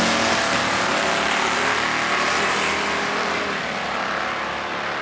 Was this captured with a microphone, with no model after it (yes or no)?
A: yes